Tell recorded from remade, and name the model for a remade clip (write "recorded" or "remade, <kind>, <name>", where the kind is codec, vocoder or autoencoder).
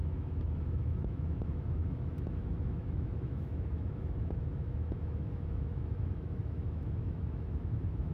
remade, autoencoder, DAC-VAE